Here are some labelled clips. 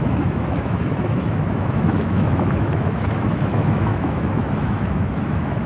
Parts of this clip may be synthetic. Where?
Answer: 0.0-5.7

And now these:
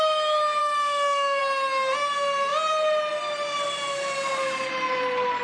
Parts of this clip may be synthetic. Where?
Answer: 0.6-1.4

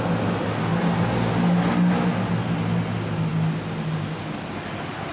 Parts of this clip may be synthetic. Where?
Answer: none

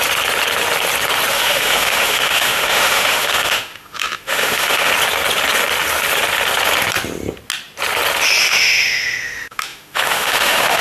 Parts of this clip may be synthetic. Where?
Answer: 1.3-4.9; 8.4-10.8

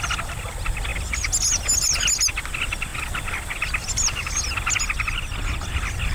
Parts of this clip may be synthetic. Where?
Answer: none

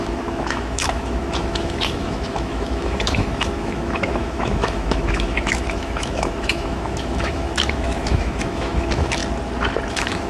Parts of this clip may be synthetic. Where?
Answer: 0.0-9.2; 9.9-10.3

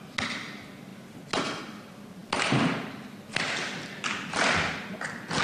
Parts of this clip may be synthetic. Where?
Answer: none